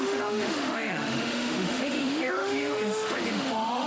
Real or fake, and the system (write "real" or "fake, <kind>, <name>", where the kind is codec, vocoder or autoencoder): fake, autoencoder, DAC-VAE